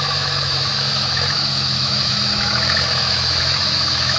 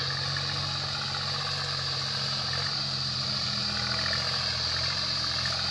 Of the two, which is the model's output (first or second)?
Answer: first